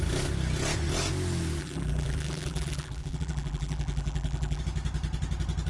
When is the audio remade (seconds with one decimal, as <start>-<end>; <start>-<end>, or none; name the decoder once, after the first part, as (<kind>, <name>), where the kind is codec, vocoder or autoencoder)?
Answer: 1.6-4.6 (vocoder, BigVGAN v2)